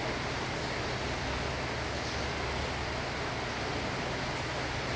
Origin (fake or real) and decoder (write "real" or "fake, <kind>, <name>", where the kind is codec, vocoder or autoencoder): real